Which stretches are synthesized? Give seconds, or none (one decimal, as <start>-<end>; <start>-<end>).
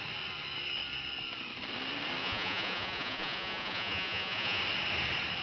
2.2-4.6